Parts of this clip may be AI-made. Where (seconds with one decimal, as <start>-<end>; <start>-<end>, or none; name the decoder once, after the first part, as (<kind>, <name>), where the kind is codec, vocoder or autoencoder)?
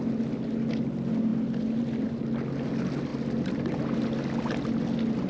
none